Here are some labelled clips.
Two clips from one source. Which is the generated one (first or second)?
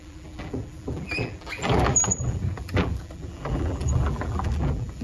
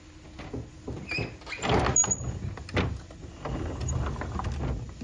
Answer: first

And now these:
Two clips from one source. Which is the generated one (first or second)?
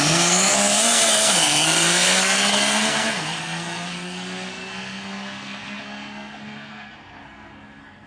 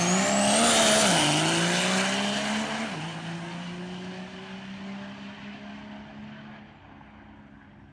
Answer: first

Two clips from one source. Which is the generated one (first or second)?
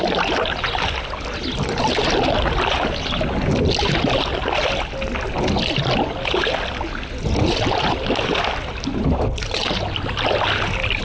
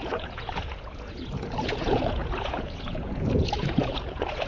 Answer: second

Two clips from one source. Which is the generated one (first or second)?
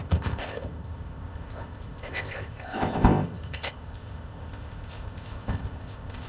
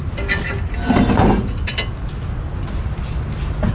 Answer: first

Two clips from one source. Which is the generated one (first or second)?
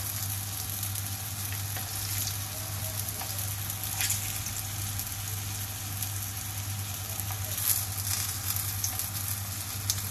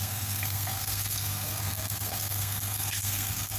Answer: second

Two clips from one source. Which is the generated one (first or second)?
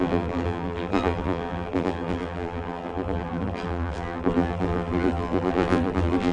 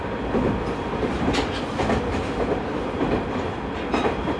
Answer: first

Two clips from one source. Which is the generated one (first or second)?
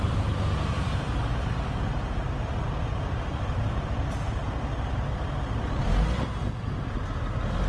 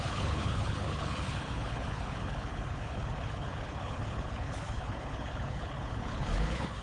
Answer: second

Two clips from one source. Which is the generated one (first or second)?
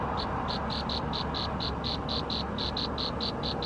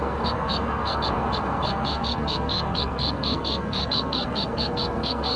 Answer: second